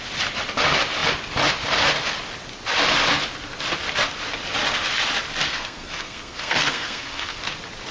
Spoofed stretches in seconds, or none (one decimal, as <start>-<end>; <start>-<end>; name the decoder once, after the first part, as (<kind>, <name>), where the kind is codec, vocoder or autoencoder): 5.5-7.4 (codec, SNAC)